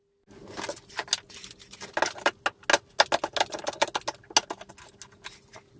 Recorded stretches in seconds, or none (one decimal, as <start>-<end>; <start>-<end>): 0.0-5.8